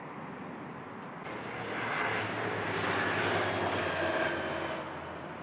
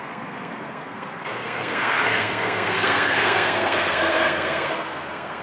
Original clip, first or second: first